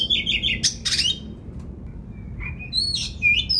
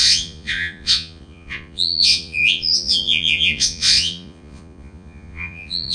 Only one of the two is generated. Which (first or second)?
second